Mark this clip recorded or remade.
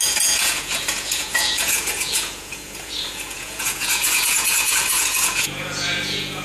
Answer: remade